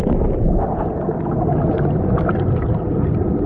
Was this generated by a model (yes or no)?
no